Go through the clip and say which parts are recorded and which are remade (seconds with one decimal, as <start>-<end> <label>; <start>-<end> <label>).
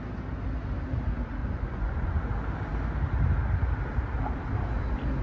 0.0-1.4 recorded; 1.4-2.2 remade; 2.2-5.2 recorded